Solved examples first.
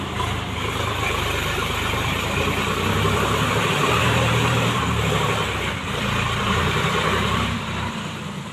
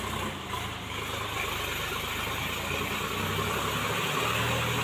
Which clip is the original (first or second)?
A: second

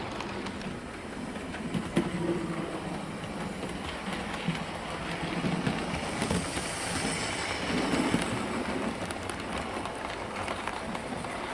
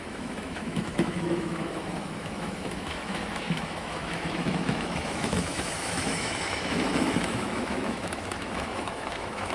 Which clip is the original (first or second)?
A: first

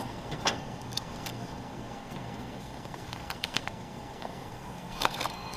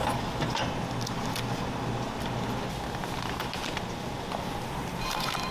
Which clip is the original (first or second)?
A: second